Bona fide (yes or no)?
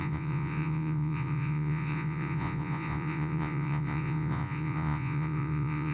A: no